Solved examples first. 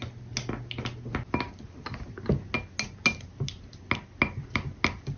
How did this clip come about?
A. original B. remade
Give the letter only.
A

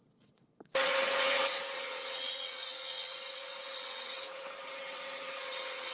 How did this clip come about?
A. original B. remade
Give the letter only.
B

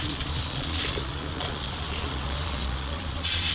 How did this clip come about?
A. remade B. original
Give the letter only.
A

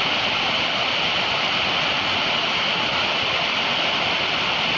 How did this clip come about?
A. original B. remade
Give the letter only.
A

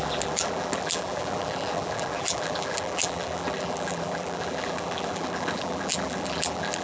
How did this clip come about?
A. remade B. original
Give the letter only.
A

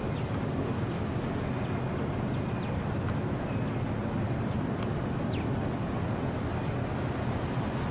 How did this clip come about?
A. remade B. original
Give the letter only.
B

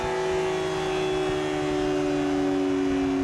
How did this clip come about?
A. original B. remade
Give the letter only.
A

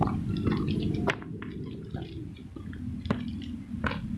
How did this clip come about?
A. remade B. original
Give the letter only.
B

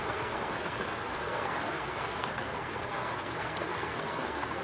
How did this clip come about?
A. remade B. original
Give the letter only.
A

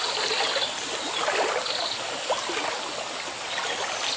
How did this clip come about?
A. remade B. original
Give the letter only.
B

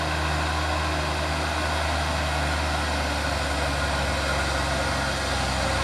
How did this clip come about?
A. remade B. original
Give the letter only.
B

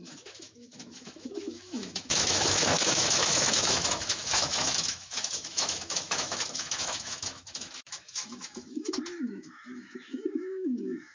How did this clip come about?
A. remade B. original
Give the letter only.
A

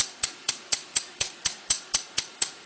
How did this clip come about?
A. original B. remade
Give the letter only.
B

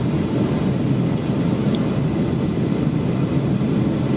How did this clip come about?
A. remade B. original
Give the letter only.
B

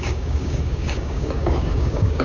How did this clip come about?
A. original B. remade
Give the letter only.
B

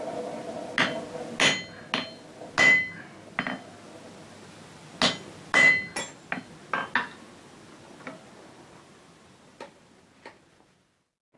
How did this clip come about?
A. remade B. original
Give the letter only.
B